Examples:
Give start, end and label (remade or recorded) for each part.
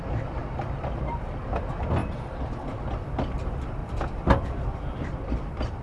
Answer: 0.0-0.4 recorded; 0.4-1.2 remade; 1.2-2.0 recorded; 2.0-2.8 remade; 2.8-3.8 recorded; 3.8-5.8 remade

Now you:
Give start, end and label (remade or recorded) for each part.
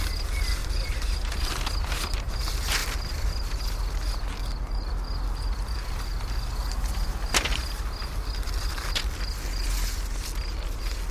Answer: 0.0-0.6 recorded; 0.6-1.6 remade; 1.6-2.8 recorded; 2.8-3.6 remade; 3.6-8.0 recorded; 8.0-8.9 remade; 8.9-11.1 recorded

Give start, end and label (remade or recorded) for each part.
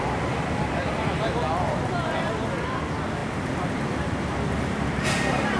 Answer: 0.0-5.6 recorded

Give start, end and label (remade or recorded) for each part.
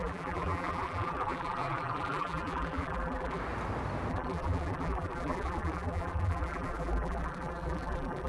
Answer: 0.0-3.4 remade; 3.4-4.1 recorded; 4.1-8.3 remade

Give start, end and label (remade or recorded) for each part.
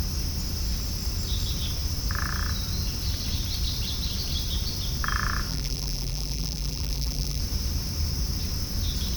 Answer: 0.0-5.5 recorded; 5.5-7.4 remade; 7.4-9.2 recorded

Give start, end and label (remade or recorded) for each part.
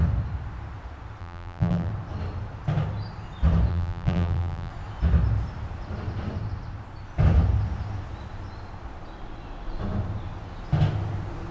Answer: 0.0-1.2 recorded; 1.2-1.9 remade; 1.9-3.7 recorded; 3.7-4.7 remade; 4.7-11.5 recorded